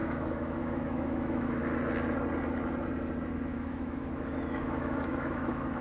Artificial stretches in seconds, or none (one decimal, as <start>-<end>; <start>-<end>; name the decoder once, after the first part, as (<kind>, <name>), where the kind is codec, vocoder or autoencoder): 0.0-1.6 (autoencoder, DAC-VAE); 3.5-5.8